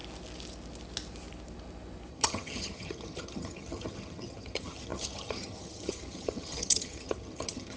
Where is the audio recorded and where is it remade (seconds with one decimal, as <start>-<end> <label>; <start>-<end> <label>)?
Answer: 0.0-2.1 recorded; 2.1-7.8 remade